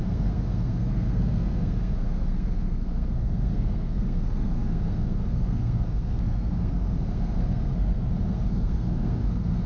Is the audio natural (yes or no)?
no